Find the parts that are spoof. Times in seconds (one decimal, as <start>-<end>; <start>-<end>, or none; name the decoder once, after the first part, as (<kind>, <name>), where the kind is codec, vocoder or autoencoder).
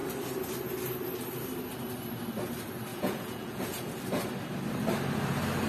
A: 2.9-3.9 (vocoder, Vocos)